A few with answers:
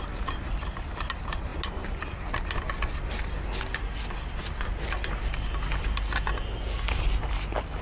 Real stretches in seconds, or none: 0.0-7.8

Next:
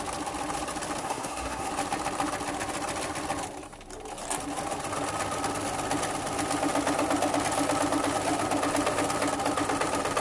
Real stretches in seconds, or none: 0.0-1.0; 1.7-10.2

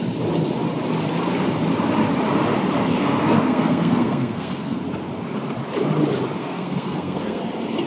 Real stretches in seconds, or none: 0.0-2.9; 4.8-6.4; 7.4-7.9

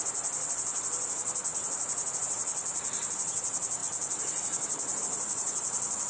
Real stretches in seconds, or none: 0.0-6.1

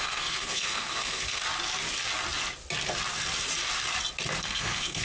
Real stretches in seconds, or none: 1.4-4.4

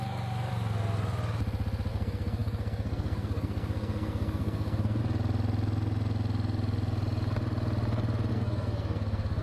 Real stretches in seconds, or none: 0.5-1.9; 5.0-8.3

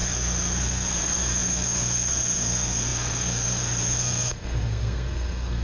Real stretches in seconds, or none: none